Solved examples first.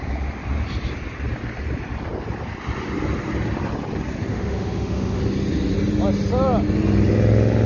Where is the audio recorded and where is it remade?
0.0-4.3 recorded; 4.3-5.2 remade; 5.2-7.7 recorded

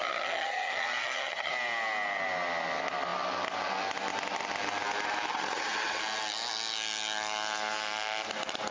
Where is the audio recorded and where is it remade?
0.0-1.5 remade; 1.5-5.3 recorded; 5.3-6.0 remade; 6.0-8.7 recorded

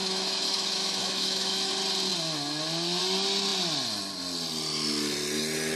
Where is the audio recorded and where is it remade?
0.0-1.7 remade; 1.7-5.8 recorded

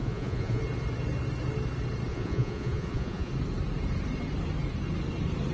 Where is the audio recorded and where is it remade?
0.0-0.6 remade; 0.6-2.1 recorded; 2.1-3.3 remade; 3.3-5.5 recorded

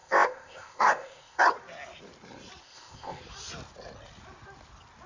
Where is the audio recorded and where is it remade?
0.0-1.4 remade; 1.4-2.6 recorded; 2.6-3.2 remade; 3.2-5.1 recorded

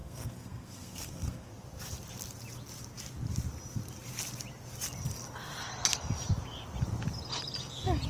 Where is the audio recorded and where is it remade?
0.0-1.5 remade; 1.5-8.1 recorded